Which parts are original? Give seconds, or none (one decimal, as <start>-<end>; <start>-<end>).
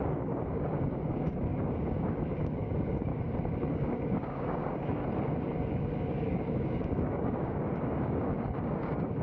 3.1-3.7; 5.0-5.7